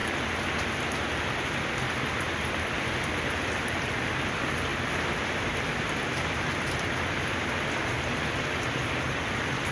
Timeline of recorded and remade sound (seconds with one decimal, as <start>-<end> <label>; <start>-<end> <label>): 0.0-9.7 recorded